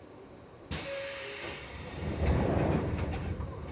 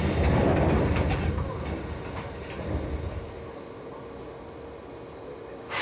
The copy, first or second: first